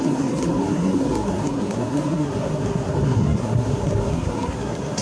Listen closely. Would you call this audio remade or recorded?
remade